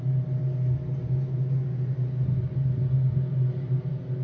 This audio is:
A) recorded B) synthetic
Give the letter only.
A